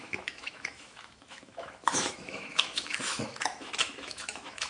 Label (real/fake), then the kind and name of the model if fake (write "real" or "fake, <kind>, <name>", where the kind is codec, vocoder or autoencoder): fake, autoencoder, DAC-VAE